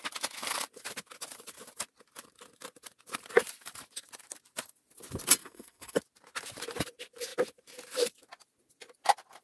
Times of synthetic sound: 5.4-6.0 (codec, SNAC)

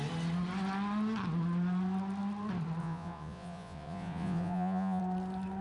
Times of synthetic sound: 2.8-5.0 (vocoder, Vocos)

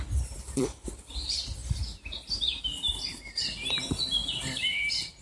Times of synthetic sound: none

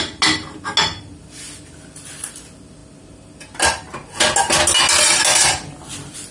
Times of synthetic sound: none

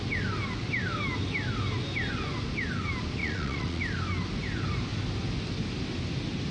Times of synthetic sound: 3.2-3.8 (vocoder, Vocos)

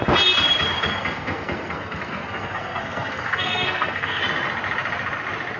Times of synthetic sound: 0.8-4.2 (codec, SNAC)

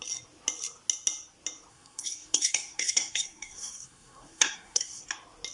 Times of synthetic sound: 1.7-5.0 (codec, SNAC)